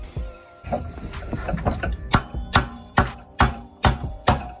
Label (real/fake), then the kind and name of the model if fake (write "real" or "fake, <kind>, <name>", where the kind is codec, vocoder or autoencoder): fake, vocoder, BigVGAN v2